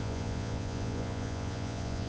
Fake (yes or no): yes